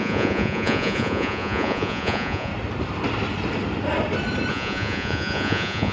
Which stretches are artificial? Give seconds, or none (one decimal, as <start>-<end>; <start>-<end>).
0.0-2.5; 4.5-5.9